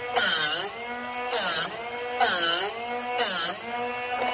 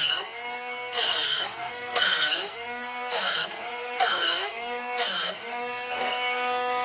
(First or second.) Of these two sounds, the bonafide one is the first